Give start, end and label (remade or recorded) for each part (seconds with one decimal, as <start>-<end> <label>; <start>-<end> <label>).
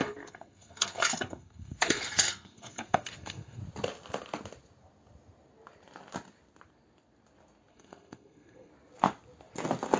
0.0-3.6 remade; 3.6-7.7 recorded; 7.7-8.7 remade; 8.7-10.0 recorded